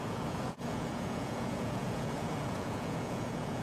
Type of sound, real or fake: fake